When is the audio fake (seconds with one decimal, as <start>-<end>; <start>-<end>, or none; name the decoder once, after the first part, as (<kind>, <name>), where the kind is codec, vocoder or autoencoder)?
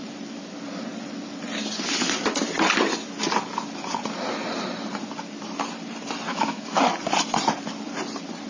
6.3-6.8 (autoencoder, DAC-VAE)